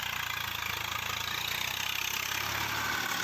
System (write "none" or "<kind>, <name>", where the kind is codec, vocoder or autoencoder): none